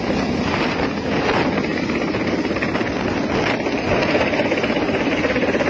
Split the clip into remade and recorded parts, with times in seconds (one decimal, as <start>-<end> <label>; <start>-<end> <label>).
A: 0.0-5.7 recorded